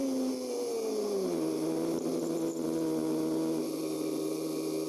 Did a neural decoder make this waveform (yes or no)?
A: no